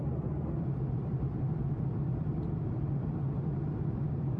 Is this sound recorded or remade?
remade